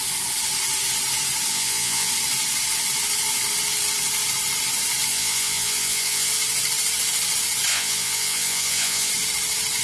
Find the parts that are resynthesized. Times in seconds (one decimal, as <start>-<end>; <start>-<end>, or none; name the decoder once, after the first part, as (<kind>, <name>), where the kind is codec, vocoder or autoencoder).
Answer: 1.5-2.1 (vocoder, Vocos); 5.1-6.3; 7.7-9.1